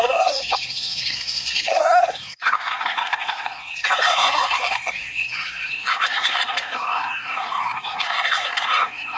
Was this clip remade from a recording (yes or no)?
yes